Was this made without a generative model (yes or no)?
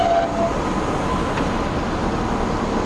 yes